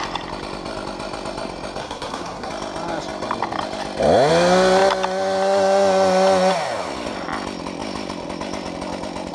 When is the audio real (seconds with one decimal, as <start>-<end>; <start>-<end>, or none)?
0.0-1.8; 2.5-9.3